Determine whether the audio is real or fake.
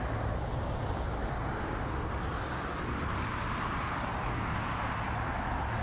real